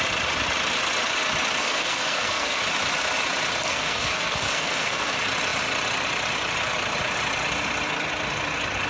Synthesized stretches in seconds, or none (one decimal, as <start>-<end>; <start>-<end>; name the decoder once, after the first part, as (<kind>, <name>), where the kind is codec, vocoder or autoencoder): 1.6-2.6 (codec, SNAC); 3.7-5.1